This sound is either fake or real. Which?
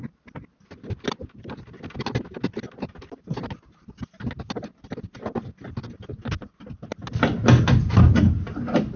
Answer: real